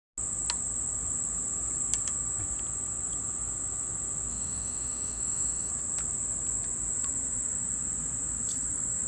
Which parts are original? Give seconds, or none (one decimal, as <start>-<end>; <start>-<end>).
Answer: 0.0-4.3; 5.7-9.1

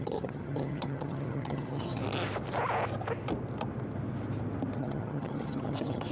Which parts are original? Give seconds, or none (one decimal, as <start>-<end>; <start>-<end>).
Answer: 2.0-4.8

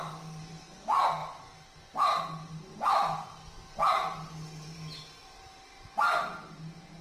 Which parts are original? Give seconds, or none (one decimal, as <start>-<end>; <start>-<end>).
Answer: 0.0-7.0

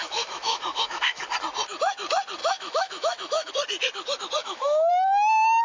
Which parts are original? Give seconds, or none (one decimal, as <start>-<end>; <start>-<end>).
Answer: 1.2-2.4; 3.5-4.4; 4.9-5.6

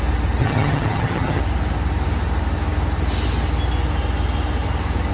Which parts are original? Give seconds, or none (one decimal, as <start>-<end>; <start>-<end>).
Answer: 0.0-0.4; 1.4-5.1